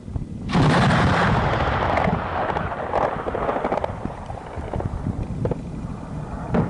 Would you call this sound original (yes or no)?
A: yes